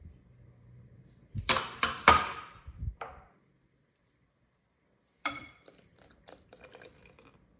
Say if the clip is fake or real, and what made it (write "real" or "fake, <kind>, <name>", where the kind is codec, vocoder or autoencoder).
fake, vocoder, BigVGAN v2